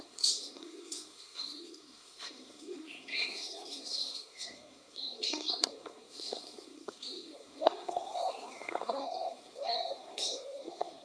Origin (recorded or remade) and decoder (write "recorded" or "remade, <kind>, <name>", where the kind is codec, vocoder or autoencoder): remade, codec, SNAC